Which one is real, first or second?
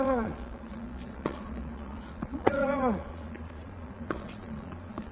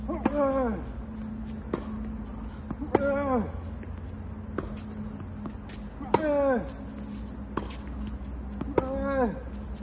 second